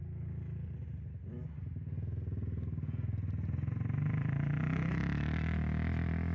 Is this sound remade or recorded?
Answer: recorded